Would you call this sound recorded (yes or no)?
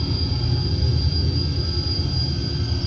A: yes